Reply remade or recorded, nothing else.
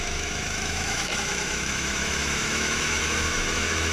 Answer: remade